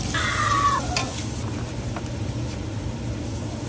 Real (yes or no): yes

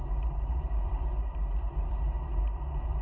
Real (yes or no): no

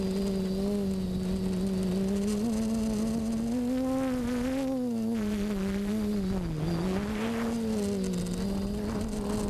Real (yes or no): yes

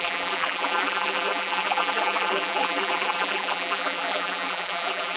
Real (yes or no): no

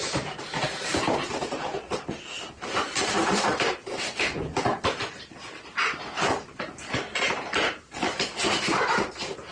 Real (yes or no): no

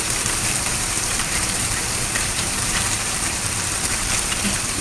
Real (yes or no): no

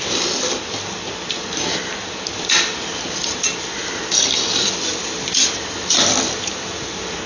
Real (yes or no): yes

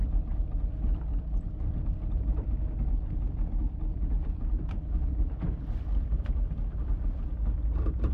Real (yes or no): yes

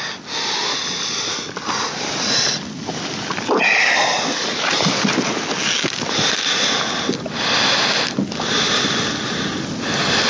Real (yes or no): yes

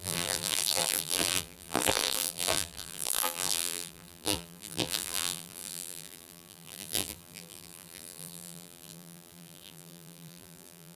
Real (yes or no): no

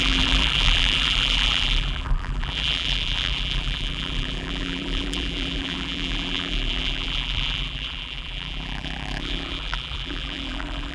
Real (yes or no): no